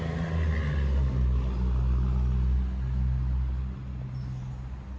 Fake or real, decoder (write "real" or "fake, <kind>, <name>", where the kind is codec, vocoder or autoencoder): real